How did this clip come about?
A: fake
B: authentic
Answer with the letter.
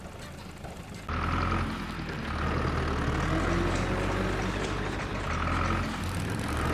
B